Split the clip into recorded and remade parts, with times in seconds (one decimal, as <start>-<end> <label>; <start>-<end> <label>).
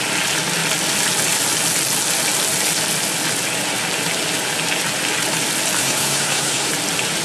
0.0-5.8 recorded; 5.8-6.7 remade; 6.7-7.2 recorded